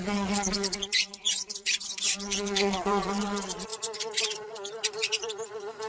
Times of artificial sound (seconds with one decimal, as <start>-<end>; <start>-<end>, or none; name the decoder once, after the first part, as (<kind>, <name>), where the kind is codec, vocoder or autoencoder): 0.0-5.9 (vocoder, Vocos)